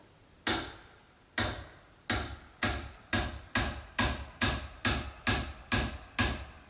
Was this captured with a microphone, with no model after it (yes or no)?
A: yes